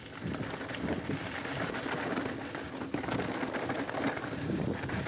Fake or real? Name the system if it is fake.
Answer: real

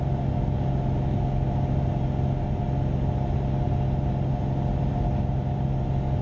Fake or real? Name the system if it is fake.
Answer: real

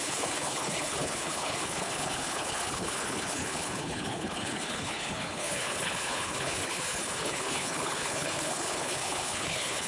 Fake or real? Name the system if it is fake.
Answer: fake, codec, HILCodec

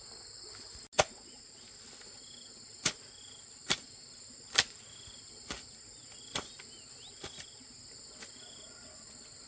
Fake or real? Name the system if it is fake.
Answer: real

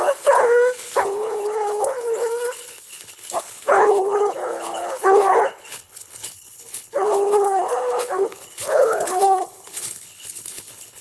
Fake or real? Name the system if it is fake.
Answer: fake, codec, HILCodec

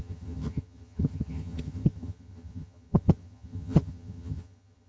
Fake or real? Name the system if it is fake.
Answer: fake, vocoder, HiFi-GAN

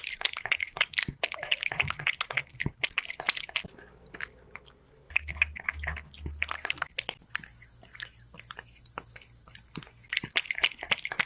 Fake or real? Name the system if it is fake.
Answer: real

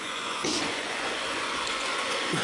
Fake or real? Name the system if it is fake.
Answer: fake, vocoder, Vocos